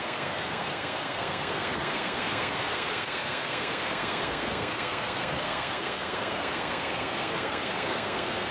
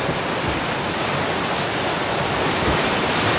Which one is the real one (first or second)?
second